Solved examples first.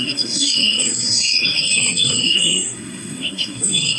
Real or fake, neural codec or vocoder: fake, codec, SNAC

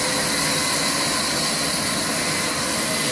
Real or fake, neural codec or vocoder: real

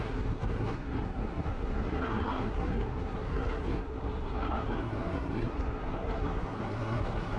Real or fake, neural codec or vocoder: fake, codec, SNAC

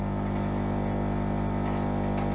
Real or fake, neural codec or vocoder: real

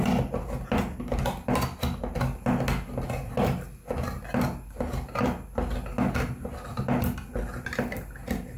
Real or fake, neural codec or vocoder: real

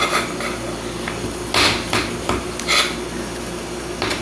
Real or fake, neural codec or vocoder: real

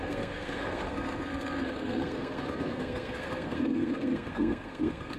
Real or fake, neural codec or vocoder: fake, codec, SNAC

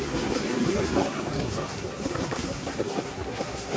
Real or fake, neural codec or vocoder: fake, codec, SNAC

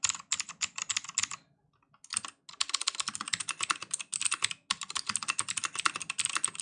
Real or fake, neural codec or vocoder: real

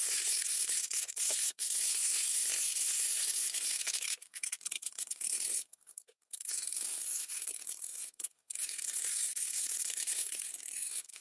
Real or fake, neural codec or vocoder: fake, codec, SNAC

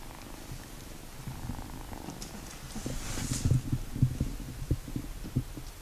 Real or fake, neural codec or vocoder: real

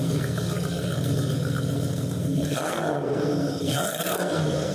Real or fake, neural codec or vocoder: fake, codec, SNAC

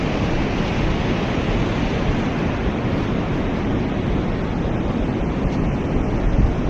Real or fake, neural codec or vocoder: real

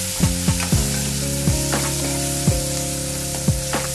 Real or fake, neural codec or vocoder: real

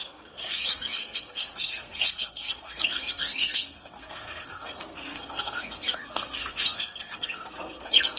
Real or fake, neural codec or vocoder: fake, codec, SNAC